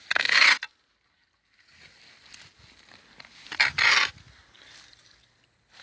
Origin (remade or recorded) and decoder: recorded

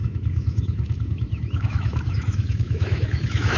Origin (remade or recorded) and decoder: remade, autoencoder, DAC-VAE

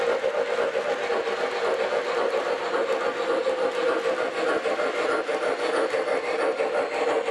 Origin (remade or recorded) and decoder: recorded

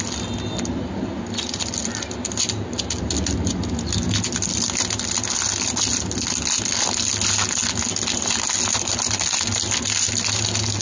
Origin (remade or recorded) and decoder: recorded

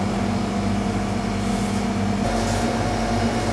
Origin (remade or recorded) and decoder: recorded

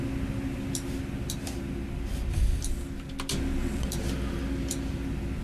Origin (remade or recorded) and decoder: recorded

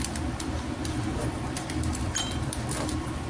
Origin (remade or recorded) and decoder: remade, vocoder, BigVGAN v2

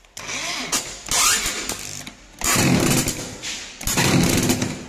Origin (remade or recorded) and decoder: recorded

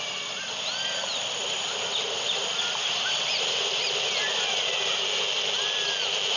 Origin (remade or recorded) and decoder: recorded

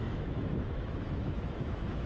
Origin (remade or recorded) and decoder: remade, autoencoder, DAC-VAE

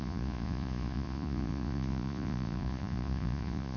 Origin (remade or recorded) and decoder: remade, vocoder, Vocos